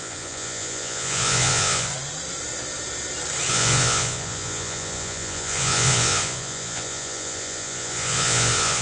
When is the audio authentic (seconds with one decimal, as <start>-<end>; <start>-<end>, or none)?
1.9-3.5